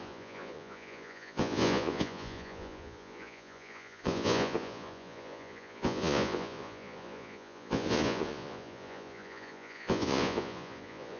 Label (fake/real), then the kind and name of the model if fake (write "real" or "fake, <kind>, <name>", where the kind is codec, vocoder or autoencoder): fake, vocoder, Vocos